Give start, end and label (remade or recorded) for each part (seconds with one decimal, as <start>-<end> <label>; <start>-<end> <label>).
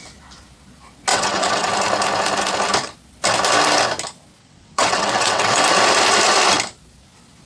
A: 0.0-1.1 recorded; 1.1-1.7 remade; 1.7-4.4 recorded; 4.4-5.6 remade; 5.6-7.5 recorded